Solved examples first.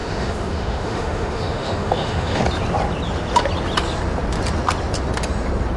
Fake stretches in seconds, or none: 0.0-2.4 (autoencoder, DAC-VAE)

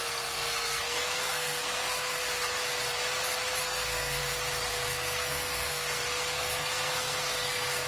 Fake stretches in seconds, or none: 0.0-2.2 (codec, SNAC); 3.6-4.2; 4.7-7.9

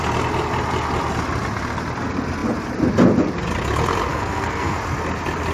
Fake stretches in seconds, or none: 4.1-4.8 (codec, SNAC)

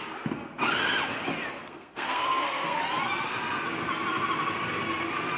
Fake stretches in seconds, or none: 1.6-2.8 (codec, SNAC)

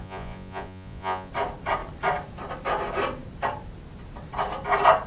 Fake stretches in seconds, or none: 0.0-1.3 (vocoder, Vocos)